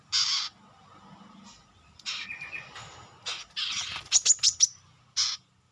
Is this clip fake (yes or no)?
no